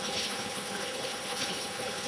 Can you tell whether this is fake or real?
fake